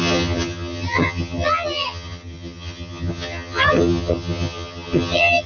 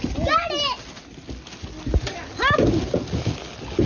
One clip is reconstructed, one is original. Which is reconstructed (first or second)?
first